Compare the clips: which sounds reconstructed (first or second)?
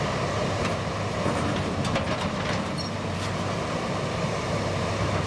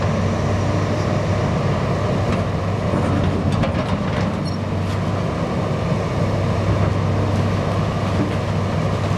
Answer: first